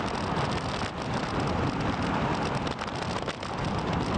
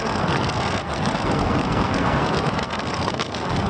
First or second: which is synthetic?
second